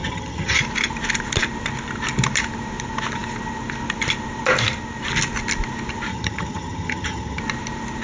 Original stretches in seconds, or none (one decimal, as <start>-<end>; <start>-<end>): 0.6-6.1; 7.4-8.0